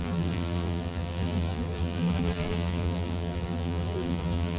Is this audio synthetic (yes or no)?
yes